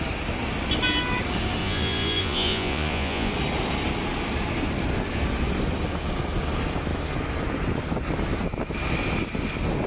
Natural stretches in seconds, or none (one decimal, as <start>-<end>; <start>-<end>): 0.0-1.6; 3.3-9.9